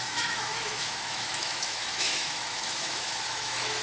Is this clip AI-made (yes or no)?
yes